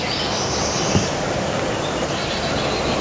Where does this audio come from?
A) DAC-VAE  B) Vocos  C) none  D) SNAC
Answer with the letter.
C